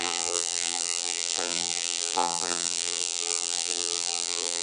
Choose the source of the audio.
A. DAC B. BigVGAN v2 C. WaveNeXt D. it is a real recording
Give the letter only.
B